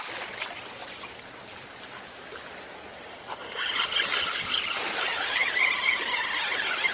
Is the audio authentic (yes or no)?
yes